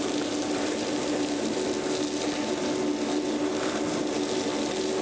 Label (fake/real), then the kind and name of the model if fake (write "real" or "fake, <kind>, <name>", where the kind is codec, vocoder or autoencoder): real